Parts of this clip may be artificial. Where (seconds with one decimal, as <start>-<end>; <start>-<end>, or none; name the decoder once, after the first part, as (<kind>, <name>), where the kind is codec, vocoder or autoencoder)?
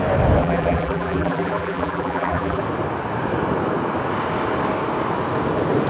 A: 0.4-2.6 (vocoder, BigVGAN v2)